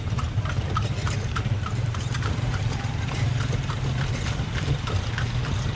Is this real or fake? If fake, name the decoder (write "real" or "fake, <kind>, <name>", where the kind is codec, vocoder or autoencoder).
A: fake, vocoder, BigVGAN v2